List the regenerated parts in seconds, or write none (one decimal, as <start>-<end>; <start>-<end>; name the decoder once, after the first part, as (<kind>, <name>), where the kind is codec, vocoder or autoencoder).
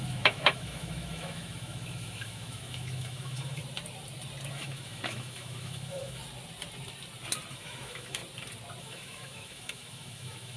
0.0-3.6 (autoencoder, DAC-VAE); 4.5-6.2; 7.5-8.2; 8.8-10.6